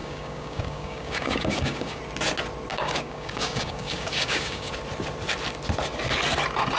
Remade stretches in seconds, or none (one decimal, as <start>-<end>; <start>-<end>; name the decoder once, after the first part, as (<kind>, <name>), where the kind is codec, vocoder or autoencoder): 0.0-2.0 (codec, DAC); 2.7-4.7